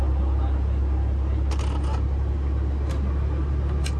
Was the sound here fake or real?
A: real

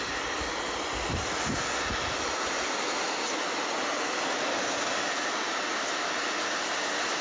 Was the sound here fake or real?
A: real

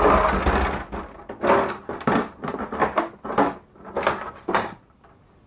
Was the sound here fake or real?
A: real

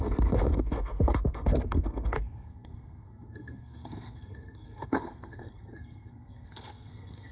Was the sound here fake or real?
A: fake